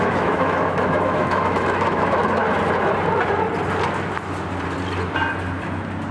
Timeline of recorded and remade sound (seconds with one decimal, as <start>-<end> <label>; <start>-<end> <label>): 0.0-2.4 remade; 2.4-6.1 recorded